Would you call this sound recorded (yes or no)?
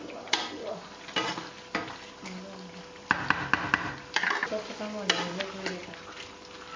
yes